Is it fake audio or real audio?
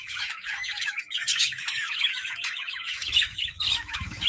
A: fake